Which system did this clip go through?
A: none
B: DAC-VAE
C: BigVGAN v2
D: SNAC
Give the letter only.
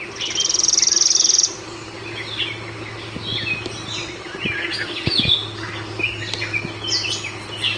A